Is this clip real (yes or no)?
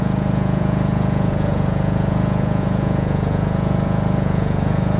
no